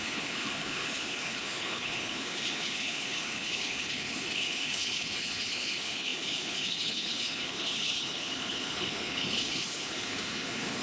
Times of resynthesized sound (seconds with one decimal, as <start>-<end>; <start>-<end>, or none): 0.0-10.8